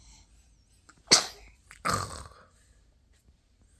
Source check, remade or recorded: recorded